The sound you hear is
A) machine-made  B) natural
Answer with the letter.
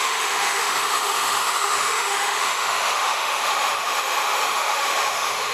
A